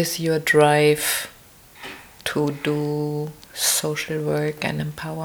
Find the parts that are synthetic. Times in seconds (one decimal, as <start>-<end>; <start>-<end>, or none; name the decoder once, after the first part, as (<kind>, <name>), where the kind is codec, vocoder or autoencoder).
none